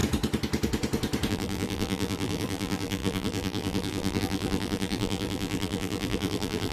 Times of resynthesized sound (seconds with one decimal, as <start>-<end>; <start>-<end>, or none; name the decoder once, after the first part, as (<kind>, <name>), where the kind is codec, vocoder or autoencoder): 1.3-6.7 (vocoder, BigVGAN v2)